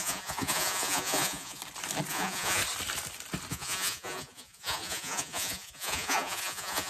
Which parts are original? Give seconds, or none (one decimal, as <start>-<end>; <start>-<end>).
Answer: 1.6-2.1; 2.6-3.5